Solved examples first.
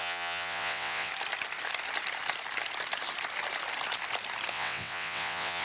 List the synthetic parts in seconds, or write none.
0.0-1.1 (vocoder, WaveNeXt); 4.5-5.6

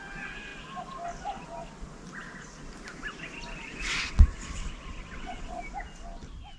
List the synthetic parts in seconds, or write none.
3.7-5.6 (vocoder, WaveNeXt)

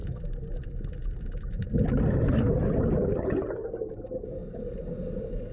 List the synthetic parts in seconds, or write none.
none

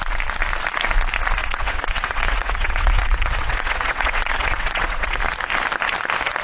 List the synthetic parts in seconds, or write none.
1.4-5.2 (vocoder, WaveNeXt)

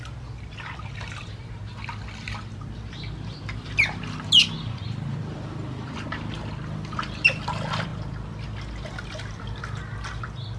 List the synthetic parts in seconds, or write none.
none